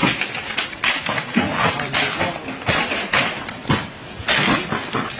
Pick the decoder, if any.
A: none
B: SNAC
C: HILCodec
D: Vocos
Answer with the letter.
A